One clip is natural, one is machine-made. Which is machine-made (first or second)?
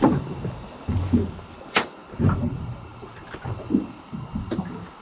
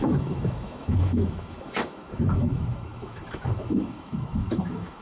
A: second